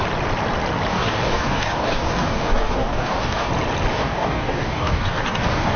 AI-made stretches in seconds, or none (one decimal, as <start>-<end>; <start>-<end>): 0.9-3.5; 3.9-5.8